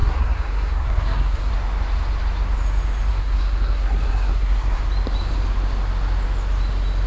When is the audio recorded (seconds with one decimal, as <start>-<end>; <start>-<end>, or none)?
1.5-3.1; 4.8-7.1